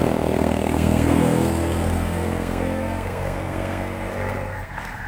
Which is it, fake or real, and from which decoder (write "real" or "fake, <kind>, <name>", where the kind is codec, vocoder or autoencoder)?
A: fake, codec, SNAC